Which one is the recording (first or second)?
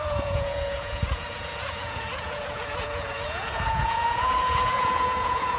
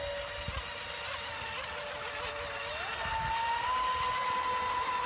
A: second